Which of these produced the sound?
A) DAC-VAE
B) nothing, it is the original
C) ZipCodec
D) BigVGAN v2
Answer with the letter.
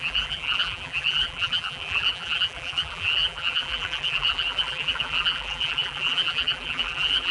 D